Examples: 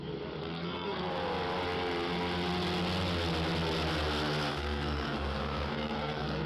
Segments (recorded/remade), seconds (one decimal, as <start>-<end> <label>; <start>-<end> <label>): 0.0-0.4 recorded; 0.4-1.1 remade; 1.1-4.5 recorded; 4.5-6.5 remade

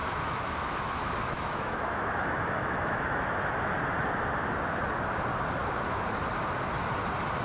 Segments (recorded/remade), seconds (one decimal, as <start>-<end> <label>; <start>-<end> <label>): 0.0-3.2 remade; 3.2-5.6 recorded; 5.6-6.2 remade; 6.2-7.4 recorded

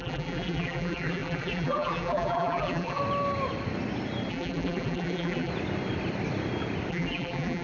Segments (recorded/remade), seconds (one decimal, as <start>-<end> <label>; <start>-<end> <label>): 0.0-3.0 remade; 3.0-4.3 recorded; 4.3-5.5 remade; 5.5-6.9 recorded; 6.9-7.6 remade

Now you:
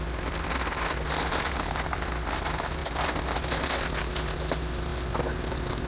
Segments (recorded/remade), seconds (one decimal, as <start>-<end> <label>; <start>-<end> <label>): 0.0-5.9 recorded